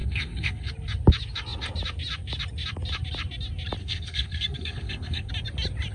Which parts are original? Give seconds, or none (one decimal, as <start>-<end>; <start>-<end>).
0.7-3.8; 5.3-5.9